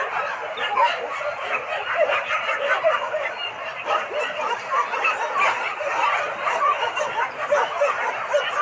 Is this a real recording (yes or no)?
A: yes